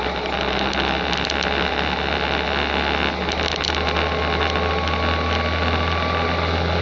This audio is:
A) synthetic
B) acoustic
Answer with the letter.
B